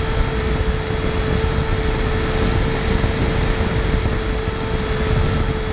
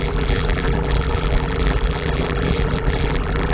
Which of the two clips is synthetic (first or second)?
second